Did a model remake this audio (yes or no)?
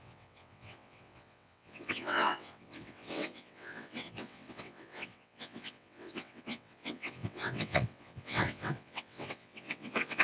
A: yes